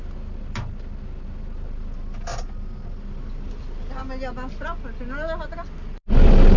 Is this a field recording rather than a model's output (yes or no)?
yes